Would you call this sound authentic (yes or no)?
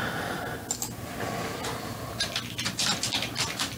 yes